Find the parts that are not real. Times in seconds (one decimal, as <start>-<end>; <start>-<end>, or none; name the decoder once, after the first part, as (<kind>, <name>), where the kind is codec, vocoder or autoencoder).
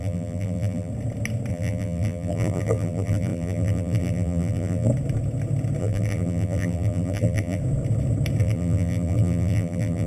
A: 0.0-0.9 (vocoder, BigVGAN v2); 1.5-4.9; 5.8-7.6; 8.4-10.1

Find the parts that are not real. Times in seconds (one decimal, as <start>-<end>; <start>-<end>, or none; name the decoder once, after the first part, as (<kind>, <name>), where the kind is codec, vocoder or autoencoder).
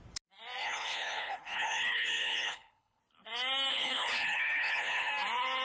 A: 0.6-3.0 (codec, HILCodec); 3.7-5.1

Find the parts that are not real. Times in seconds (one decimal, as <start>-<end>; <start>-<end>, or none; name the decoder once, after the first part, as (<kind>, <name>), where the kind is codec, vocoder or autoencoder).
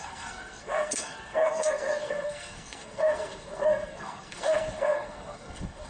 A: 0.0-5.9 (codec, SNAC)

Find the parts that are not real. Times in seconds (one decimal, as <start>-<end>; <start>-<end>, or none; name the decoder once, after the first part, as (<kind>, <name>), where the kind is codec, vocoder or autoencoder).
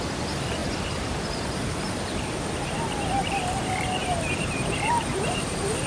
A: 0.6-1.7 (vocoder, BigVGAN v2); 4.0-5.9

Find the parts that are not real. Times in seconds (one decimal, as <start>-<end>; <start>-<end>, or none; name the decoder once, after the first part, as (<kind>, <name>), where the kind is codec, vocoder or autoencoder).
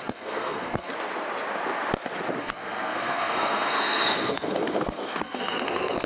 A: 0.0-0.9 (codec, SNAC); 2.4-6.1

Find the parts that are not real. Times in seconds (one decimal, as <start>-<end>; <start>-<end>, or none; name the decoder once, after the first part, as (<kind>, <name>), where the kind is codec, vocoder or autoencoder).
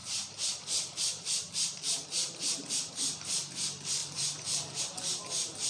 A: 0.0-5.7 (vocoder, BigVGAN v2)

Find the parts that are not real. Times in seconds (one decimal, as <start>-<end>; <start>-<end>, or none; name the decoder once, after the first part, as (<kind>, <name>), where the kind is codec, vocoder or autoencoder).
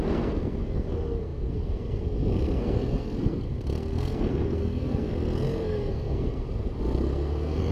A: 0.0-7.7 (codec, SNAC)